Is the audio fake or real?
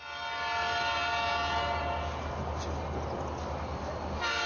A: real